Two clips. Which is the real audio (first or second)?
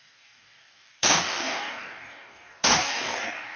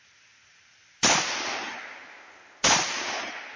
second